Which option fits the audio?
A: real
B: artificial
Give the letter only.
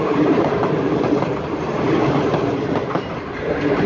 B